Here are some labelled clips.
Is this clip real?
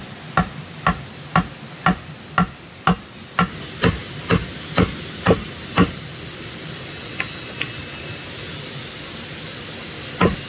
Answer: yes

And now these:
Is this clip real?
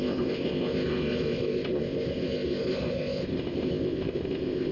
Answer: no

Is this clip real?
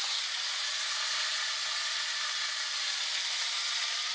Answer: yes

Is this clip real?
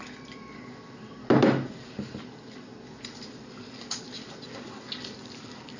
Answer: yes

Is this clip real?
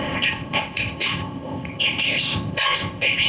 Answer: no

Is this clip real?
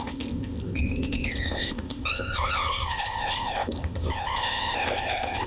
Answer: no